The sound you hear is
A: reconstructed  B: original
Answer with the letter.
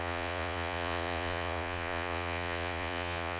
A